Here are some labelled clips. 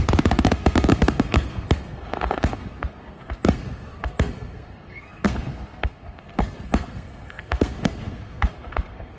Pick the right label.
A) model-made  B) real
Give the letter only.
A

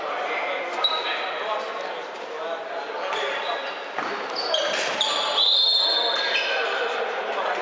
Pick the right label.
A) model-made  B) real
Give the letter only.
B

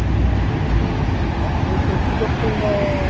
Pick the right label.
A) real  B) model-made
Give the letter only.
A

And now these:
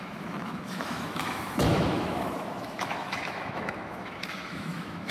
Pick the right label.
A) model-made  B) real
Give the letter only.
A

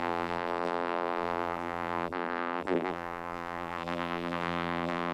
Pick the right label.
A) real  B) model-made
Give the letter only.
B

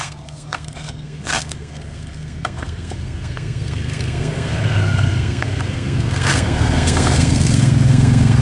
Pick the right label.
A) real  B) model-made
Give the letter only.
B